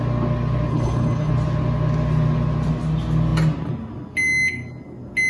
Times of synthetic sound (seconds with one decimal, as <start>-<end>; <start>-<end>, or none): 0.7-1.3